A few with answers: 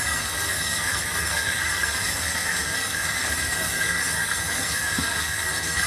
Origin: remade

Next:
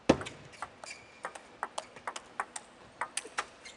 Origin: recorded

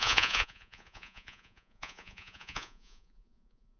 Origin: remade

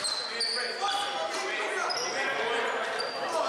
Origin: recorded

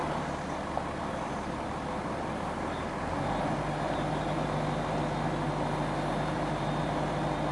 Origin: recorded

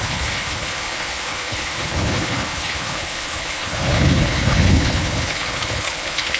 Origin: remade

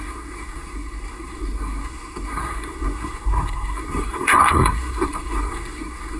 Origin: remade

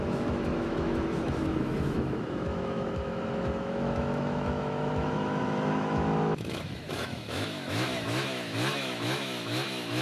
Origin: remade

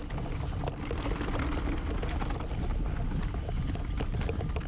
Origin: recorded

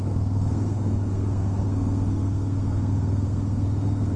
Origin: remade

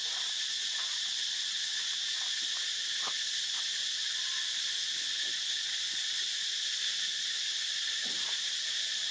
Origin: recorded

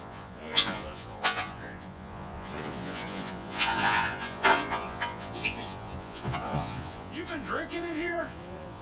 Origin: remade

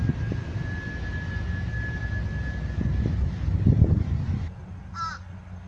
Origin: recorded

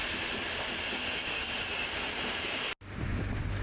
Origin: recorded